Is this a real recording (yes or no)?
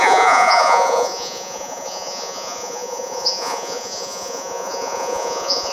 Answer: no